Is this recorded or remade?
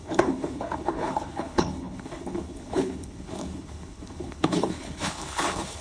remade